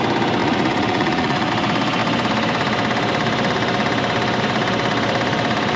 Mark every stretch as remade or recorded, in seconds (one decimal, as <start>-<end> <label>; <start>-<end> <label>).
0.0-0.4 recorded; 0.4-1.5 remade; 1.5-5.8 recorded